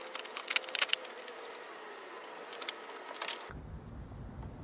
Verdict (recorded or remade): recorded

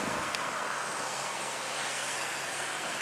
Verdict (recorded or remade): remade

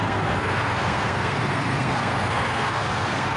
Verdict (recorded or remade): remade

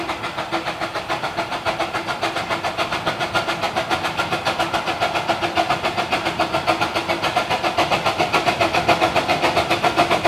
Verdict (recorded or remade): recorded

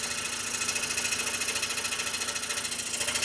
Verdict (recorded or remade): recorded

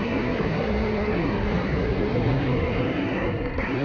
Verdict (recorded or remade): remade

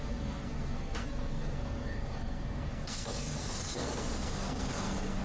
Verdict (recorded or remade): remade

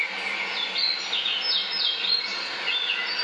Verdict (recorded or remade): recorded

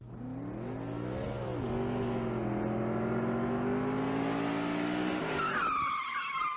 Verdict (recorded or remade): recorded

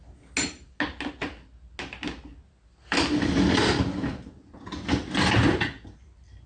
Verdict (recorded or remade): recorded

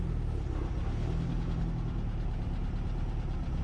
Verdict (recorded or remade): recorded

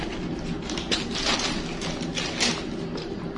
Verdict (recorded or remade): recorded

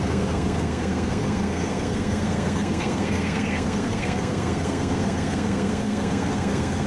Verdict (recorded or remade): remade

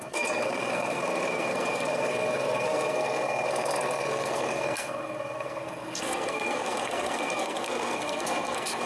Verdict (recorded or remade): remade